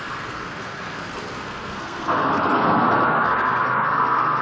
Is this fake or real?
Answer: fake